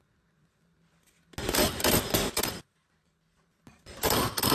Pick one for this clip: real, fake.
real